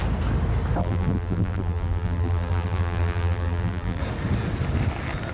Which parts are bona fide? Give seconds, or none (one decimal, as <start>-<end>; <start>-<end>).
0.0-0.8; 4.0-5.3